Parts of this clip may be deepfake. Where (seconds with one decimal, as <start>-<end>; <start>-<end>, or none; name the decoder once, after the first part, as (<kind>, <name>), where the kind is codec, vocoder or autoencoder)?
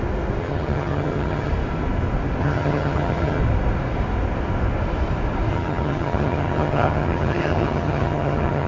0.4-1.5 (vocoder, HiFi-GAN); 2.4-3.4; 5.5-8.7